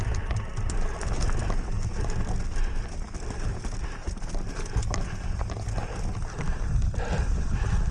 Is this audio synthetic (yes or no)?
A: no